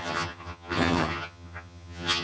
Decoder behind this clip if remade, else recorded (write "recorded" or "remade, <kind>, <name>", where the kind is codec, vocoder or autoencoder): remade, vocoder, HiFi-GAN